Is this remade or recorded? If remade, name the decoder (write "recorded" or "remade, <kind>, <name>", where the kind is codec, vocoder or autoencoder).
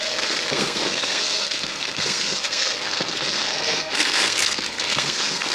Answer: remade, codec, SNAC